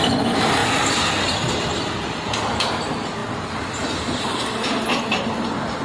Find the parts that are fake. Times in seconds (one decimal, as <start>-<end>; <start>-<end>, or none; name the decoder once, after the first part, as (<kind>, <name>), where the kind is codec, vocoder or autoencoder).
none